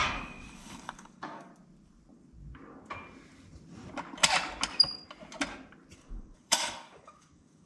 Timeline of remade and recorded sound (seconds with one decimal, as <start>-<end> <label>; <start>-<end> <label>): 0.0-1.5 remade; 1.5-5.9 recorded; 5.9-7.7 remade